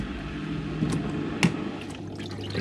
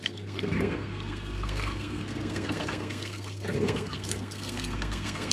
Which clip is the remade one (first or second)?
second